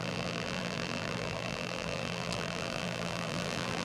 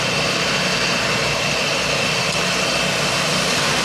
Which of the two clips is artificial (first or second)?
first